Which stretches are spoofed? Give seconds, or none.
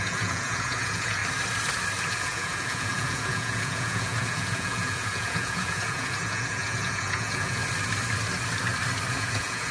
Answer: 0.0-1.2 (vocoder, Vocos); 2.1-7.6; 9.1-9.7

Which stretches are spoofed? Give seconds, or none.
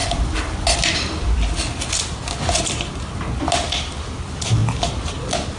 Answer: none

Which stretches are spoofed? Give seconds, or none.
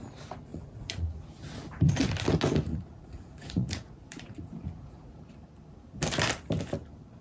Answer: 0.5-1.3 (vocoder, Vocos); 2.7-5.1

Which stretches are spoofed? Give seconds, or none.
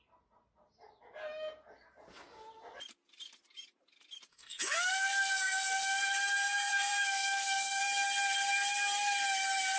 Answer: 4.3-6.0 (codec, SNAC); 6.4-7.8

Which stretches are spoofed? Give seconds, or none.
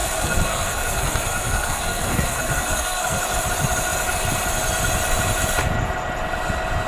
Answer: 0.0-3.2 (codec, SNAC)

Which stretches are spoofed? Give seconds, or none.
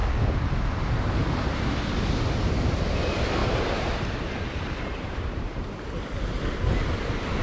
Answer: 3.4-5.6 (vocoder, BigVGAN v2)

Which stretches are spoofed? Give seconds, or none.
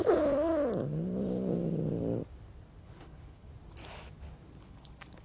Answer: 0.0-0.5 (codec, HILCodec); 2.8-3.5; 4.6-5.2